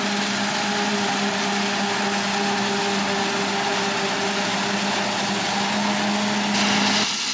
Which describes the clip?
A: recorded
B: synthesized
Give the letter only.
A